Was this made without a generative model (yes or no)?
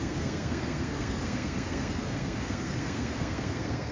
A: no